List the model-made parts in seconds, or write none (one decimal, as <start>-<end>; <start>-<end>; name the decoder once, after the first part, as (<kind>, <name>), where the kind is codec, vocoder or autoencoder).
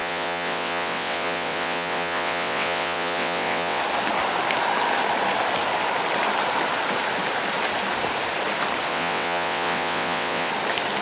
0.0-3.8 (vocoder, WaveNeXt); 8.9-10.5